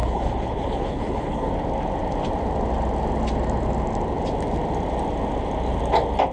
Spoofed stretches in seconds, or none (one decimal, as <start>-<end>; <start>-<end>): 0.0-1.5